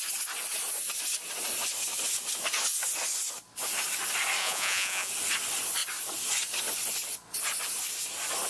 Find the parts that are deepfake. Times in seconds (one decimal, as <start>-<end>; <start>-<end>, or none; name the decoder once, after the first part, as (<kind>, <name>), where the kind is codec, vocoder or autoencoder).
4.4-5.1 (vocoder, Vocos)